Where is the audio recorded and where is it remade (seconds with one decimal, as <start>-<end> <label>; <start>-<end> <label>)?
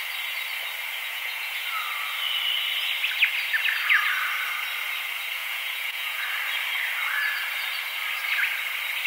0.0-1.0 recorded; 1.0-1.6 remade; 1.6-5.4 recorded; 5.4-6.2 remade; 6.2-9.1 recorded